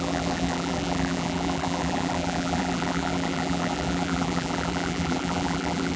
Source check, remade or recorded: remade